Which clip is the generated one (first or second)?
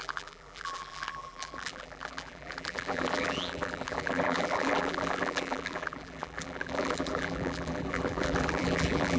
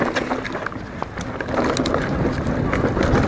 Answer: first